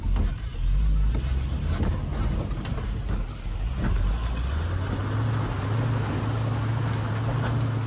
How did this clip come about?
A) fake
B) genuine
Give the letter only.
B